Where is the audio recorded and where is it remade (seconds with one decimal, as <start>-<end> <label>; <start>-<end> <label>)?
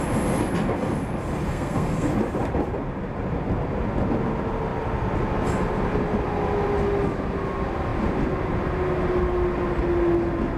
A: 0.0-1.5 recorded; 1.5-2.1 remade; 2.1-10.6 recorded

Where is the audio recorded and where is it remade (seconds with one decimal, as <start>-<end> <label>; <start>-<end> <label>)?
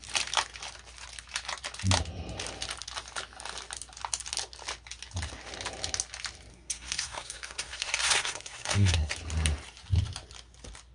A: 0.0-6.5 recorded; 6.5-9.1 remade; 9.1-10.9 recorded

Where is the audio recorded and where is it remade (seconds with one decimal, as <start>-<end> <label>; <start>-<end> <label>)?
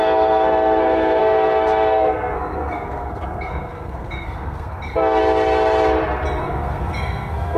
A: 0.0-5.2 remade; 5.2-6.4 recorded; 6.4-7.6 remade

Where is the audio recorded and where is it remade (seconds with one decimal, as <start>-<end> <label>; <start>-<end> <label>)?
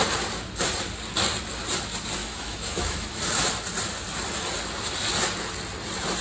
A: 0.0-2.2 recorded; 2.2-3.2 remade; 3.2-6.2 recorded